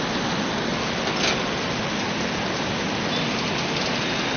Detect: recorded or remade recorded